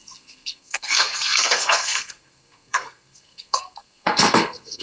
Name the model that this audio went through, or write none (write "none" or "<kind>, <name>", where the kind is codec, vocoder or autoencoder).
codec, SNAC